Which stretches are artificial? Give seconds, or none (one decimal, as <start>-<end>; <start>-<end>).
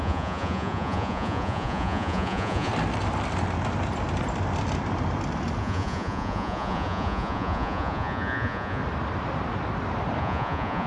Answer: 0.0-2.7; 5.6-8.8; 10.2-10.9